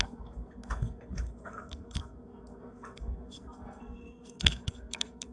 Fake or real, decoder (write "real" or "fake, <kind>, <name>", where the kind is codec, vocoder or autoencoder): fake, codec, SNAC